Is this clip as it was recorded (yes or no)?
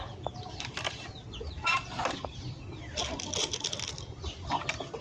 no